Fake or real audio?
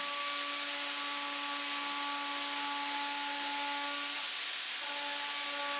real